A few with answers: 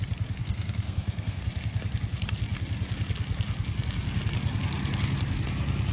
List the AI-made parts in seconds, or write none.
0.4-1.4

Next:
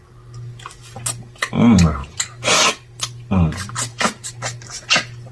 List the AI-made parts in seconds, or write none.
none

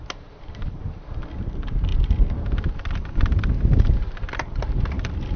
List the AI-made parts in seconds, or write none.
none

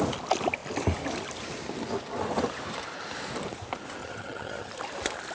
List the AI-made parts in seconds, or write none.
4.0-4.7